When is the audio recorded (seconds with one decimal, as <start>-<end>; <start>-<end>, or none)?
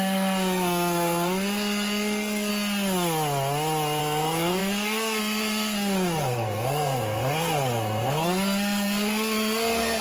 2.5-4.0